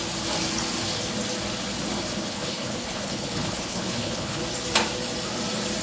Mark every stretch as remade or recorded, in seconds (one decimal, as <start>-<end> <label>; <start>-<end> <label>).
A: 0.0-2.3 recorded; 2.3-4.4 remade; 4.4-5.8 recorded